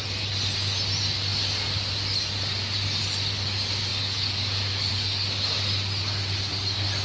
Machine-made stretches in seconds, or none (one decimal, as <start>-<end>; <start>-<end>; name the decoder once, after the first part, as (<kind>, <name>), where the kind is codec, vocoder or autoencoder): none